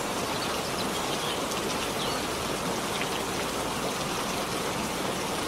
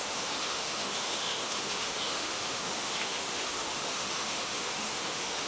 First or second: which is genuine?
first